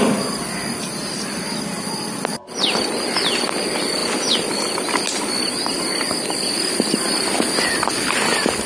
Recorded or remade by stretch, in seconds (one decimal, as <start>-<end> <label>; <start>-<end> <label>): 0.0-8.7 recorded